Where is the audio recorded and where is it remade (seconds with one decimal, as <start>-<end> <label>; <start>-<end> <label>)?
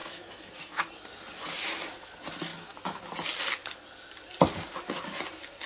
0.0-0.9 remade; 0.9-2.5 recorded; 2.5-3.0 remade; 3.0-5.7 recorded